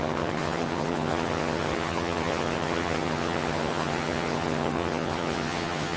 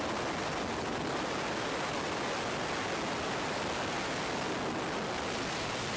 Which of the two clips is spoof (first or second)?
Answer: first